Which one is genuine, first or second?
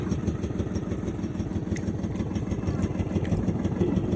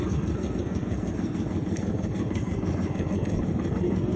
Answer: first